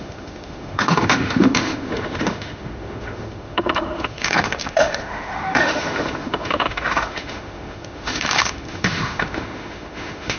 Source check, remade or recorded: remade